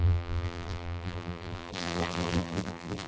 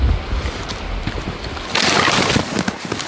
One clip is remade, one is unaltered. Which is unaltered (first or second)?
second